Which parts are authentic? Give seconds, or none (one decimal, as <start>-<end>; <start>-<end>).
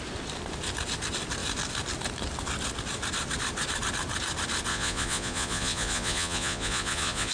0.0-4.7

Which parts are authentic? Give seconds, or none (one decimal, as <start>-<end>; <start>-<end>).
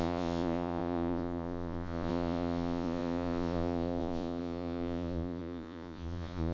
none